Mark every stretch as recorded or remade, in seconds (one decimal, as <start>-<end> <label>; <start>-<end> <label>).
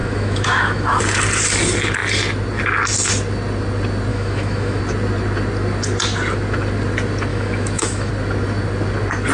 0.0-1.0 remade; 1.0-4.1 recorded; 4.1-4.8 remade; 4.8-7.3 recorded; 7.3-8.1 remade; 8.1-9.3 recorded